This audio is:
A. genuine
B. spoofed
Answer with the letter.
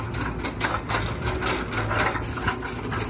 A